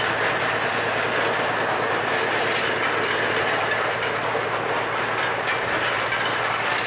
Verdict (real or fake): real